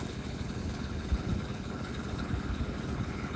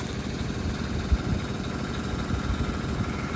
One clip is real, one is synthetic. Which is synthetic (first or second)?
first